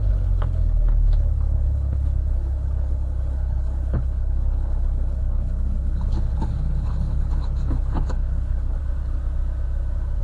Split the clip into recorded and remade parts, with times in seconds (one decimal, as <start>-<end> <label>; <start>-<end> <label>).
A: 0.0-8.8 remade; 8.8-10.2 recorded